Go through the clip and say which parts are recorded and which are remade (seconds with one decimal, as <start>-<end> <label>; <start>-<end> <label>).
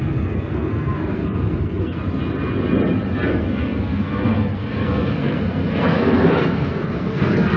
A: 0.0-2.0 remade; 2.0-3.3 recorded; 3.3-7.6 remade